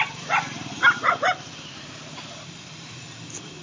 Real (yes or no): yes